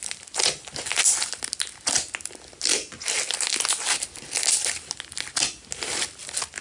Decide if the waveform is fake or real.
real